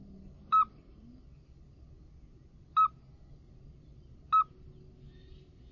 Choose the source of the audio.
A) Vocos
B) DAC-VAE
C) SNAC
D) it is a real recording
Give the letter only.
D